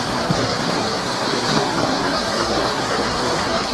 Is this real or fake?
fake